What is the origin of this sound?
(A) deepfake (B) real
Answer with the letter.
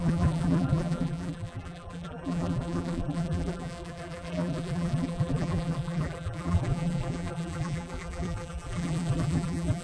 A